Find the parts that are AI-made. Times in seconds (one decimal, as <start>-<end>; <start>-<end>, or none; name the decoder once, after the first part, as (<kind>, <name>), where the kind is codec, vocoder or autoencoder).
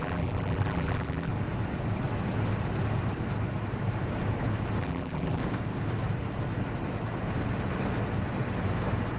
0.0-1.3 (vocoder, BigVGAN v2); 4.8-5.4